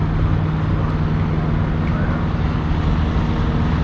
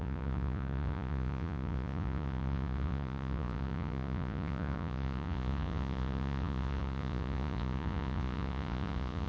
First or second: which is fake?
second